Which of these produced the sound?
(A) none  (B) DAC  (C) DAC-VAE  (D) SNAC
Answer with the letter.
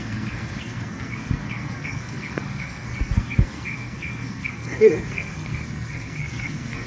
D